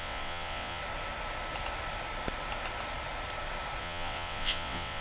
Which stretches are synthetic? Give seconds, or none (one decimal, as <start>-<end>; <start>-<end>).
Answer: 0.0-0.8; 3.8-5.0